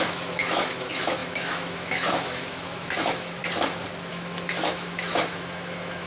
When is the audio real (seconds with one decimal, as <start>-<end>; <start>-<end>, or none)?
3.4-4.1